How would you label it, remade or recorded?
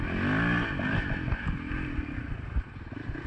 recorded